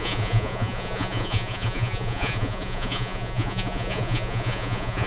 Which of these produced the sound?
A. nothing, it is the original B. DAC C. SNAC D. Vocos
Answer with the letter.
D